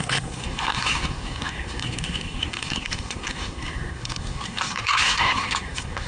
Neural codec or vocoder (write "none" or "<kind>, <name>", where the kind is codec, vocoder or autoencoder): codec, SNAC